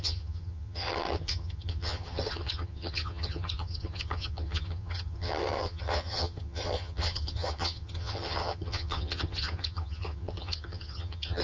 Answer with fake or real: fake